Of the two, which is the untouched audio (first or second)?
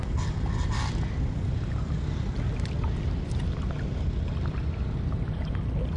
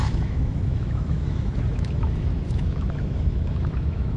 first